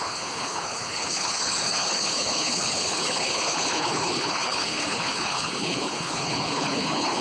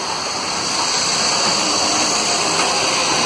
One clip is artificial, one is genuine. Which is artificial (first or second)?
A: first